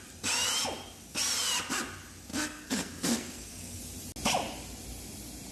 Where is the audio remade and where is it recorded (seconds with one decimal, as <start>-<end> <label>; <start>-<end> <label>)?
0.0-2.3 recorded; 2.3-3.8 remade; 3.8-5.5 recorded